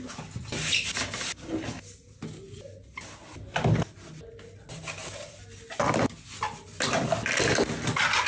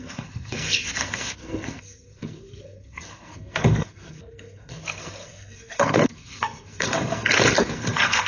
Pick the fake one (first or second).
second